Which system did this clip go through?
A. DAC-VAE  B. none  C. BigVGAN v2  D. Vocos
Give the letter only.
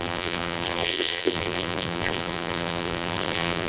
C